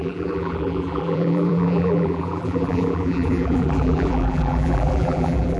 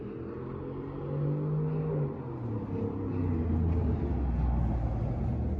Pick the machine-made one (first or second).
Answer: first